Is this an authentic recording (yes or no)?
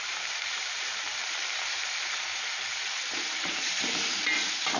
no